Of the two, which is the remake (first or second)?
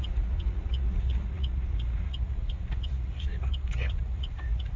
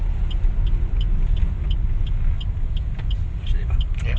first